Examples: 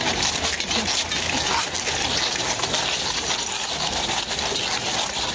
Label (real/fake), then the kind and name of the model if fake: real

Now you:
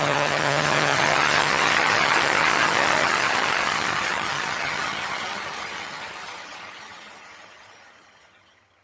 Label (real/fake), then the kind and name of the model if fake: fake, vocoder, HiFi-GAN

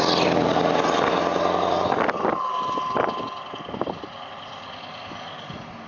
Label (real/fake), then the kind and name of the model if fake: real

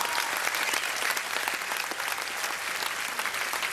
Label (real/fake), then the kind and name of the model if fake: real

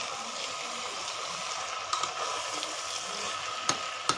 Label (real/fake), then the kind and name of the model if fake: real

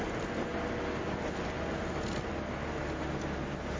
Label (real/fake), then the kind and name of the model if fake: real